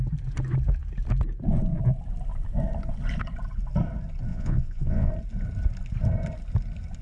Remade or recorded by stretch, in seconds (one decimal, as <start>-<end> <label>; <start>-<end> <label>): 0.0-4.3 recorded; 4.3-5.1 remade; 5.1-7.0 recorded